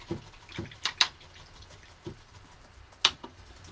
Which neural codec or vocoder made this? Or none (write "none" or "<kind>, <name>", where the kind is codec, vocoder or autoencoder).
none